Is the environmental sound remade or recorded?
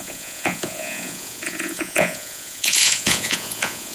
remade